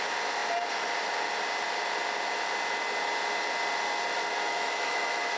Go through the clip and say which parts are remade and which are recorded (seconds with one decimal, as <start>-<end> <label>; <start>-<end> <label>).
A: 0.0-4.3 recorded; 4.3-5.4 remade